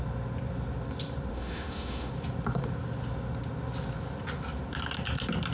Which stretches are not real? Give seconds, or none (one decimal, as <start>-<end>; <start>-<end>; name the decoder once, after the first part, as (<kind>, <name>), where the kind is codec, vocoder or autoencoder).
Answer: 1.3-2.1 (autoencoder, DAC-VAE)